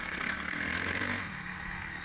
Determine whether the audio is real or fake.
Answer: fake